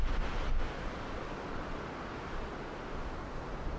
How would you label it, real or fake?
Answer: real